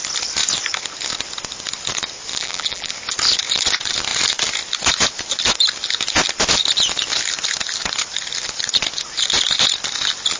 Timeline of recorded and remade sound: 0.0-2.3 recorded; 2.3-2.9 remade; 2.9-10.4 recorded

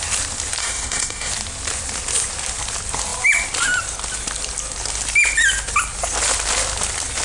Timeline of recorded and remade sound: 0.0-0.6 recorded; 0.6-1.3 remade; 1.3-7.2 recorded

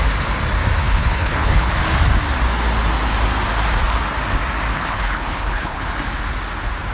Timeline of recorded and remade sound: 0.0-0.8 recorded; 0.8-1.7 remade; 1.7-4.7 recorded; 4.7-5.9 remade; 5.9-6.9 recorded

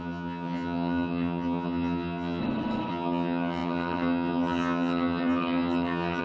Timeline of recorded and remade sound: 0.0-2.4 remade; 2.4-2.9 recorded; 2.9-6.2 remade

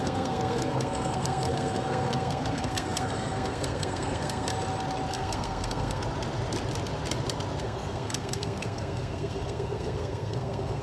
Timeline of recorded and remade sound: 0.0-4.5 remade; 4.5-5.1 recorded; 5.1-6.0 remade; 6.0-7.6 recorded; 7.6-10.8 remade

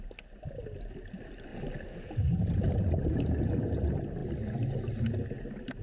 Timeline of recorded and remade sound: 0.0-1.5 recorded; 1.5-3.5 remade; 3.5-5.8 recorded